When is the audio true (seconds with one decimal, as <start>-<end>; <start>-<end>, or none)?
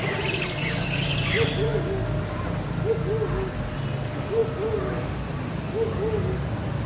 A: 0.0-6.9